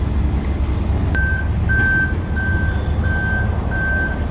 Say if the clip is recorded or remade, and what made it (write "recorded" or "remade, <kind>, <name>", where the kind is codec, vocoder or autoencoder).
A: recorded